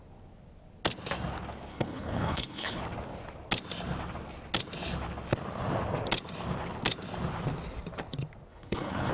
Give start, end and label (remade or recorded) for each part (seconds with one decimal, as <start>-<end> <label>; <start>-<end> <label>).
0.0-1.7 recorded; 1.7-2.8 remade; 2.8-8.5 recorded; 8.5-9.1 remade